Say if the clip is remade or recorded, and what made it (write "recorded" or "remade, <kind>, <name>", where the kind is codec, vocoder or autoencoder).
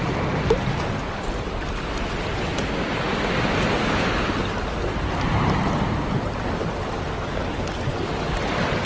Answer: recorded